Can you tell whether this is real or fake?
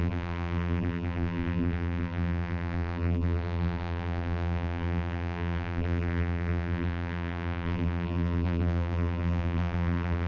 fake